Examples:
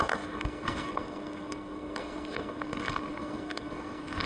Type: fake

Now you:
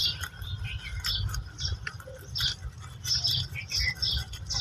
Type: real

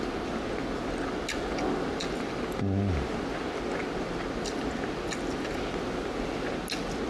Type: real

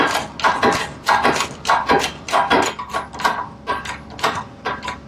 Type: real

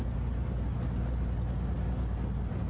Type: real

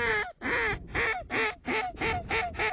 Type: real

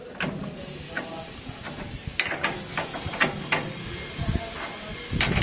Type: real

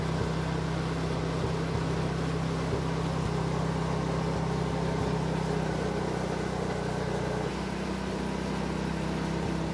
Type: real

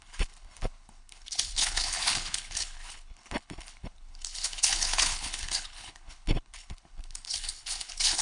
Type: fake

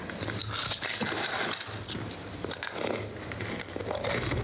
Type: real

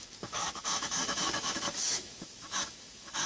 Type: fake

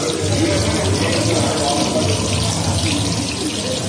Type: real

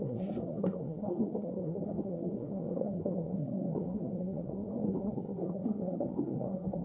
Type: fake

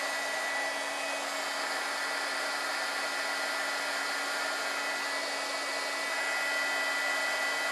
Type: real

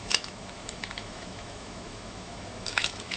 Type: fake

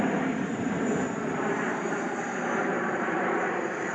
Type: fake